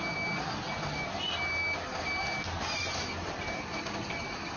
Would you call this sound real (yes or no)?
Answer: yes